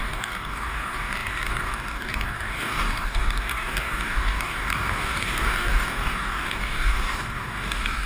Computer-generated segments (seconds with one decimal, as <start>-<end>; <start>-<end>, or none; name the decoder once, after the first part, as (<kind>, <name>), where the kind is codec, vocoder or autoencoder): 0.0-8.1 (codec, DAC)